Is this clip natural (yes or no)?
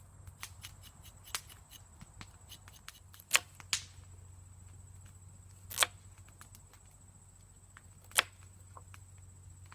yes